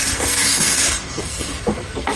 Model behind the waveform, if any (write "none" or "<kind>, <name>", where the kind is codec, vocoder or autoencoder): codec, SNAC